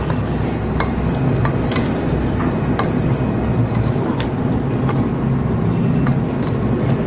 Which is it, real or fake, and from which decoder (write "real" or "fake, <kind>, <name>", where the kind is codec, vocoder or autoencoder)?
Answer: real